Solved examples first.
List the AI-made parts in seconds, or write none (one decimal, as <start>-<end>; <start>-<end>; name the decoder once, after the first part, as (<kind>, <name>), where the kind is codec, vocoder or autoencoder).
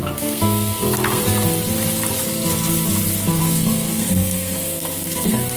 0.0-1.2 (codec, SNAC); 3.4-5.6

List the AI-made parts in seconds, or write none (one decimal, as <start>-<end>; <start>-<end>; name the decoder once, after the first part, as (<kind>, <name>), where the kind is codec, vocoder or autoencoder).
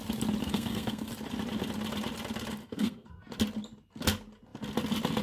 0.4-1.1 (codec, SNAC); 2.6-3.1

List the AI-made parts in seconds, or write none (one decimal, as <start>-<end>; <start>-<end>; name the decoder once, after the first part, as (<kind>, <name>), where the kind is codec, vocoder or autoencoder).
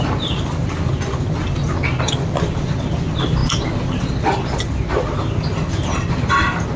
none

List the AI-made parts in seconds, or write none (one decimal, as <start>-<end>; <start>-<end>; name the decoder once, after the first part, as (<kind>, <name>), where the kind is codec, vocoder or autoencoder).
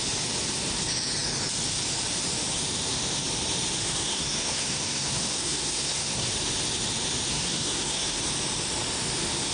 3.8-6.3 (codec, SNAC); 7.3-8.2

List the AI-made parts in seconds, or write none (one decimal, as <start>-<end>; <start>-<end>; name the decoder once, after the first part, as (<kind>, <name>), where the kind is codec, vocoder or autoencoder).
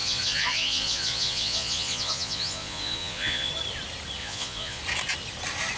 0.0-3.5 (vocoder, Vocos); 4.2-4.8